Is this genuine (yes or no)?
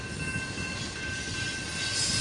yes